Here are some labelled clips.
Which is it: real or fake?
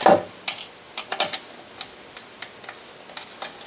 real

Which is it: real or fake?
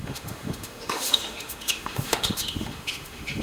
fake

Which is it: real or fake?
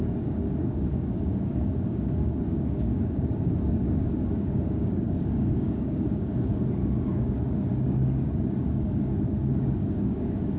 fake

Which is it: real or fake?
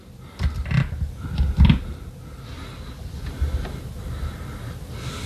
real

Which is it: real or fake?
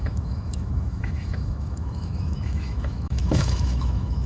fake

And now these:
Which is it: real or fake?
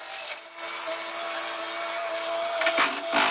real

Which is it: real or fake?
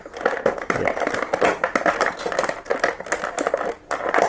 real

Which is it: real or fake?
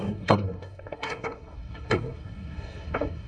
fake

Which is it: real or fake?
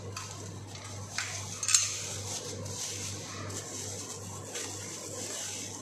real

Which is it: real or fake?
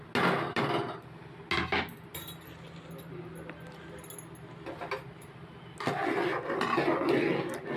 real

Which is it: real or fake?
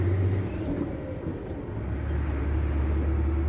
real